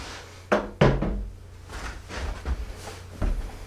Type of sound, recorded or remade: recorded